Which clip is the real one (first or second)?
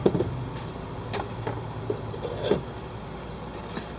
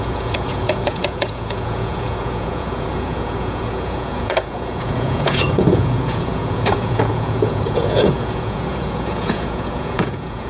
first